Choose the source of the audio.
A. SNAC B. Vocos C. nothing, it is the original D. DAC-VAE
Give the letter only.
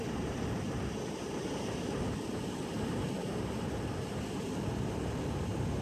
C